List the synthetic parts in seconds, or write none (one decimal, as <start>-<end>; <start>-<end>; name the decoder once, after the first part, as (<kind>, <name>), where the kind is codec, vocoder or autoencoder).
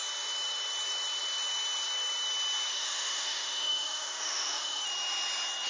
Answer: 2.7-4.8 (autoencoder, DAC-VAE)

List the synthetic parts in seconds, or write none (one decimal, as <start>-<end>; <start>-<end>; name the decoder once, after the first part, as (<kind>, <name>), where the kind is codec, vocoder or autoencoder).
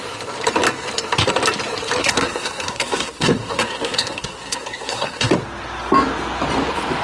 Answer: 2.0-5.3 (codec, SNAC)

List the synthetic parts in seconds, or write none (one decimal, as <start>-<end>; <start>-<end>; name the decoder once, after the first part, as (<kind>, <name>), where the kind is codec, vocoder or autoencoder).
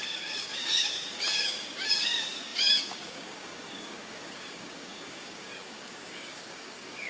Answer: 0.0-7.1 (codec, DAC)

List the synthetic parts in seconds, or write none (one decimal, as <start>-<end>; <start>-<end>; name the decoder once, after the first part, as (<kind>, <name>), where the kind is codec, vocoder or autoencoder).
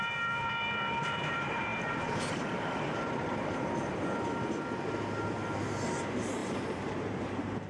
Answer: 0.0-1.7 (vocoder, BigVGAN v2); 2.3-3.6; 5.6-7.7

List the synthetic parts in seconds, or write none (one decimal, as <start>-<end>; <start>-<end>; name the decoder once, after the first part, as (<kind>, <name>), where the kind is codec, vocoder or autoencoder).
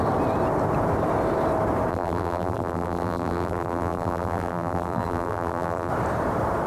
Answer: 1.9-5.9 (vocoder, BigVGAN v2)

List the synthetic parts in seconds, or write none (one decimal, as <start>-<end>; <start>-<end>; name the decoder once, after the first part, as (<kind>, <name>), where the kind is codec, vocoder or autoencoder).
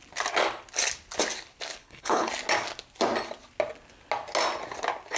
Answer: 1.8-2.3 (codec, HILCodec)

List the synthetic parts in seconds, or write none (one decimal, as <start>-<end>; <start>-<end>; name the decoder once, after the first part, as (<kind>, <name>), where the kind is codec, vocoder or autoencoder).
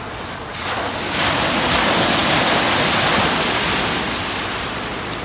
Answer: none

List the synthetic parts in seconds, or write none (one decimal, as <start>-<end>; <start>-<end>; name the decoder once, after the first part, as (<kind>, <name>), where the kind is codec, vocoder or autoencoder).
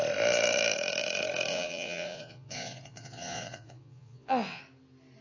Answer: 1.5-4.6 (vocoder, Vocos)